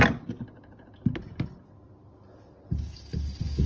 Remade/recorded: recorded